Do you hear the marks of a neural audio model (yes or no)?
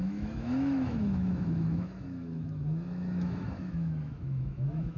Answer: yes